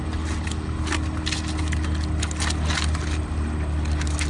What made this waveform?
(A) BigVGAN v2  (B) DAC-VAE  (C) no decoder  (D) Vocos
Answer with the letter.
C